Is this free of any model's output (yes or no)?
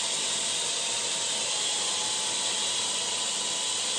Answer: yes